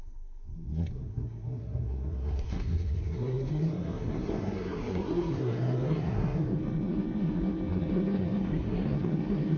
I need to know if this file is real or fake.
fake